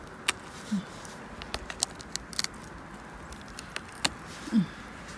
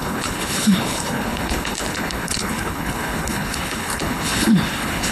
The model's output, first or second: second